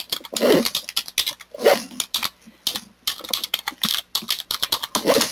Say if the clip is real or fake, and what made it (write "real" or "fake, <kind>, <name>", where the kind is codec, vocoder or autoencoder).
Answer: real